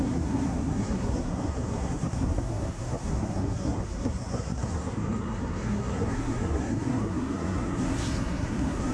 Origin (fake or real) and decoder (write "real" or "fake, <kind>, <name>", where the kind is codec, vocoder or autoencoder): fake, codec, SNAC